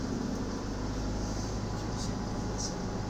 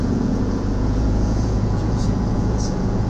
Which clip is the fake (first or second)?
second